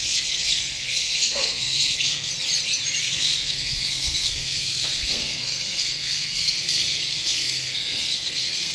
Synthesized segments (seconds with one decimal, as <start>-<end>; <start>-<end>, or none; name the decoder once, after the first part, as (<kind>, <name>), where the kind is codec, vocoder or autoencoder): 0.0-2.3 (codec, SNAC); 3.0-8.7